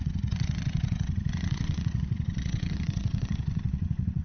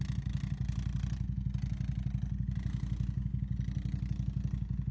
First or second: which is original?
second